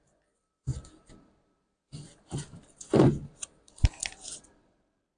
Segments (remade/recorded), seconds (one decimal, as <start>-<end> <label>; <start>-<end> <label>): 0.0-1.9 recorded; 1.9-5.2 remade